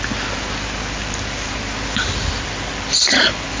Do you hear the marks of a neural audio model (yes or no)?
no